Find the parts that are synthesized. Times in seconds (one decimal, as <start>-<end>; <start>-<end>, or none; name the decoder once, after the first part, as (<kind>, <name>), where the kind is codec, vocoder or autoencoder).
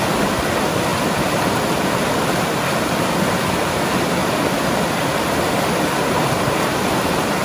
0.9-2.1 (vocoder, BigVGAN v2)